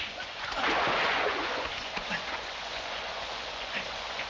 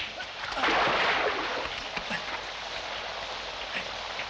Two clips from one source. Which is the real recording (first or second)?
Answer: second